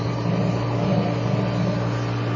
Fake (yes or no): no